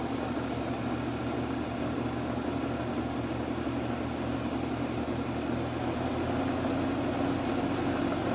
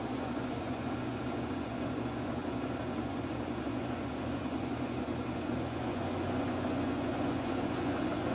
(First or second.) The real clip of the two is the first